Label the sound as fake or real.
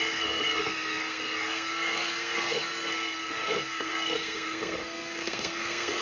fake